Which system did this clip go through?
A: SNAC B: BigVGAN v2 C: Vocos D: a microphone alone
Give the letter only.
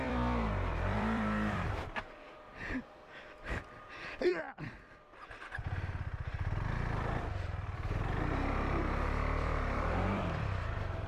B